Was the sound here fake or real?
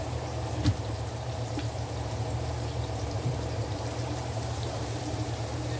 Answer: fake